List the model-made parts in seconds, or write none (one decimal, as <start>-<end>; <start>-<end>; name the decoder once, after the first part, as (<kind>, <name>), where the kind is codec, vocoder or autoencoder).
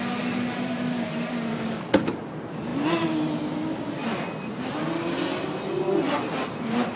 1.5-2.2 (codec, DAC)